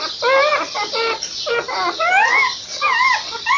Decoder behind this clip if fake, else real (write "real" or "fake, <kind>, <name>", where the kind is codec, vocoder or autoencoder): real